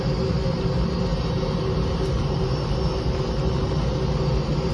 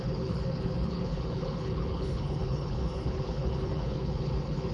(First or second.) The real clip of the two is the first